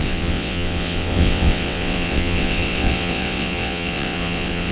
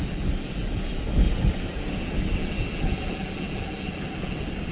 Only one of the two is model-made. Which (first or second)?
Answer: first